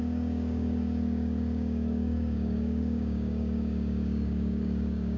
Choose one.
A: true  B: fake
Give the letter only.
B